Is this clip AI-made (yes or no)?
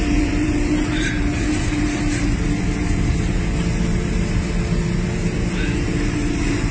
yes